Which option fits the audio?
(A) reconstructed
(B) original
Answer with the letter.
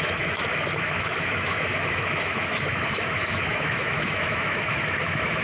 A